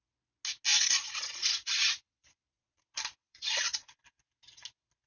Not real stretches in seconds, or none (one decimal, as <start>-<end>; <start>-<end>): 0.7-2.8; 3.2-4.0